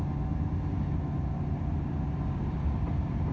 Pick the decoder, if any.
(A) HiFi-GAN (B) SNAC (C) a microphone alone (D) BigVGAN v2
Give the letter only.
C